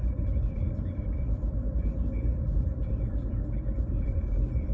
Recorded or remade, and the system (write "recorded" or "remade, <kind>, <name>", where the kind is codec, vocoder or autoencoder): remade, vocoder, BigVGAN v2